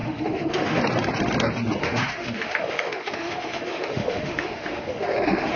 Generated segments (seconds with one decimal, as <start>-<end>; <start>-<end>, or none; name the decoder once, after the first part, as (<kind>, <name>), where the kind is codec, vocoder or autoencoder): 0.0-0.8 (autoencoder, DAC-VAE); 1.8-5.6